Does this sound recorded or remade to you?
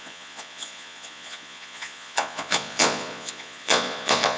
remade